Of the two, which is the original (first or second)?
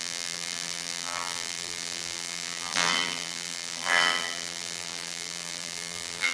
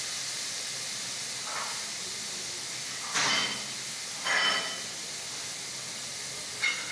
second